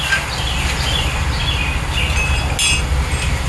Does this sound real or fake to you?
real